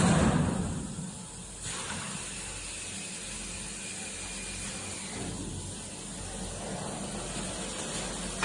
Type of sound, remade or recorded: recorded